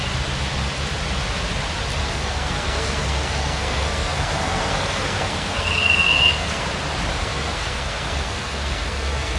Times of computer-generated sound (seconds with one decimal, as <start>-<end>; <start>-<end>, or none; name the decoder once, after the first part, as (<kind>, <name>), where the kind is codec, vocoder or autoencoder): 2.0-6.7 (codec, SNAC); 7.2-9.4